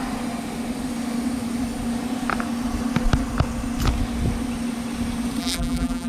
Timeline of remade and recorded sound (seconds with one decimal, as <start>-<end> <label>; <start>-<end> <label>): 0.0-5.4 recorded; 5.4-6.1 remade